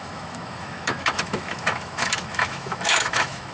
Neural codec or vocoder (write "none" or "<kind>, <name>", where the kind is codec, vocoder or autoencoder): autoencoder, DAC-VAE